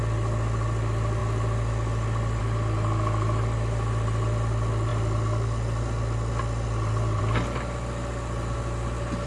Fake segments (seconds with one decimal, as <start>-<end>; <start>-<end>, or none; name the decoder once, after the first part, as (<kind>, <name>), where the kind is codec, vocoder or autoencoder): none